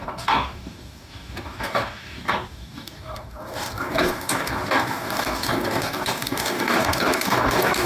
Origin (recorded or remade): remade